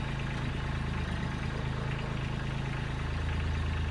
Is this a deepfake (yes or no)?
no